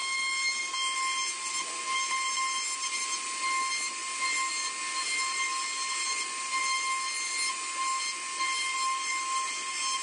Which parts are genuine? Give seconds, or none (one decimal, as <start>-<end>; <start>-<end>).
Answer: 0.0-10.0